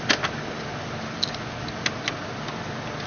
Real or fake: real